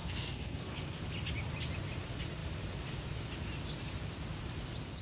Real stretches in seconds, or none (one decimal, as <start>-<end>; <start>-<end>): 1.0-5.0